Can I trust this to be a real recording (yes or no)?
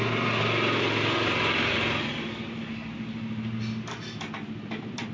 yes